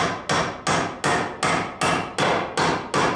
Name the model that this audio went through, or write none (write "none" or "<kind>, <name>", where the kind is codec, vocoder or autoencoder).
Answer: none